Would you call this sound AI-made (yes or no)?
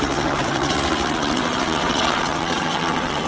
yes